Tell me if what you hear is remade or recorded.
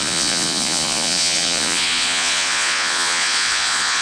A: remade